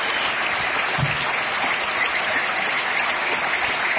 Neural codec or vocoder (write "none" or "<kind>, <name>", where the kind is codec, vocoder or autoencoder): none